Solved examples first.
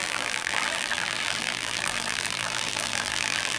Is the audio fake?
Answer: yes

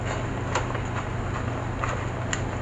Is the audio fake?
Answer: no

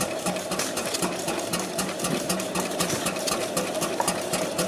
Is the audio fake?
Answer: yes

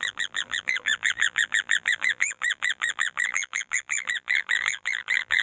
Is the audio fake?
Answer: yes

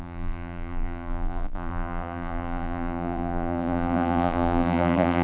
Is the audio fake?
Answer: yes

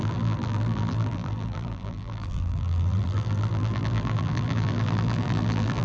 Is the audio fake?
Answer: yes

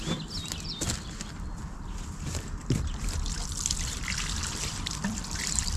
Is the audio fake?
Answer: yes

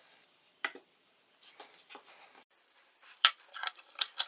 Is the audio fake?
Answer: yes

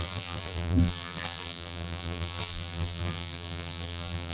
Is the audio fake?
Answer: yes